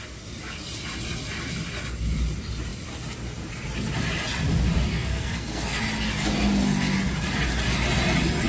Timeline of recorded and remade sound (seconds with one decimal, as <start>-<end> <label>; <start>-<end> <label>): 0.0-4.9 recorded; 4.9-5.8 remade; 5.8-8.5 recorded